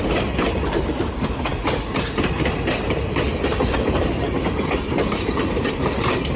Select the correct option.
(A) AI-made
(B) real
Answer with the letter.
A